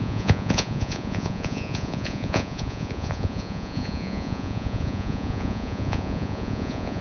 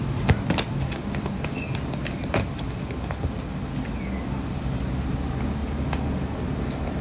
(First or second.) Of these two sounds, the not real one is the first